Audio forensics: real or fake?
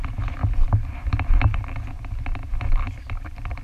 real